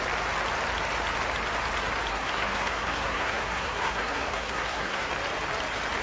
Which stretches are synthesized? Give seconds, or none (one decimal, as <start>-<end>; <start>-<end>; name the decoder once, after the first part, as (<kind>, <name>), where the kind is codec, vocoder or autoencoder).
2.1-5.1 (codec, SNAC)